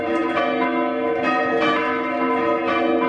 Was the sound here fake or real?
real